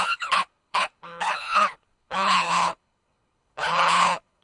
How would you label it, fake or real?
fake